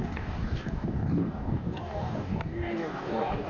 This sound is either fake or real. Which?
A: fake